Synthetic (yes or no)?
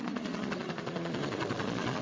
yes